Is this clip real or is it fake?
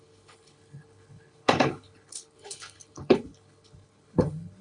fake